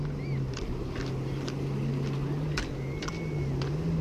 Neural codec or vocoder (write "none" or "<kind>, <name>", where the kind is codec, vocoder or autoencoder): none